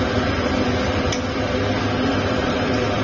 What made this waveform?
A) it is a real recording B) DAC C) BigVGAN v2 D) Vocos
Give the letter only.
A